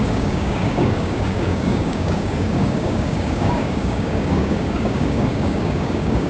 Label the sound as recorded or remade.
remade